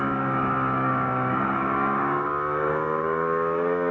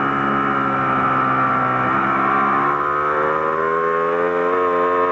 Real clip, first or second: second